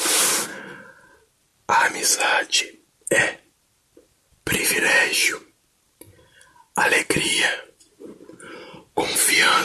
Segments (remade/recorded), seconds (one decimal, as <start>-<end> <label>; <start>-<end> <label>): 0.0-1.5 remade; 1.5-2.6 recorded; 2.6-9.6 remade